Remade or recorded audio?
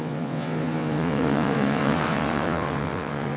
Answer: remade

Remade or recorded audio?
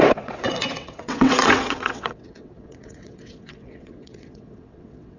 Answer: remade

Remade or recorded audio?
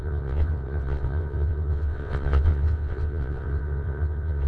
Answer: remade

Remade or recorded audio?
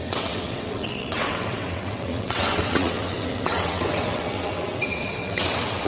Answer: remade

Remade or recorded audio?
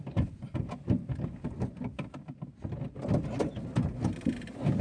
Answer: recorded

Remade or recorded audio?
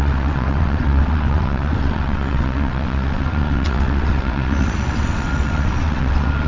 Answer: remade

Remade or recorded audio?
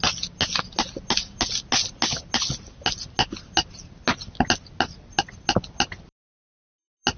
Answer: recorded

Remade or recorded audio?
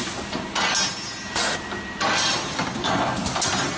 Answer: recorded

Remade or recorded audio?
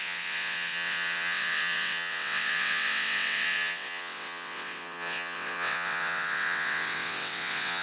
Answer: remade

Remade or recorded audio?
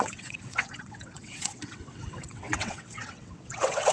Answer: remade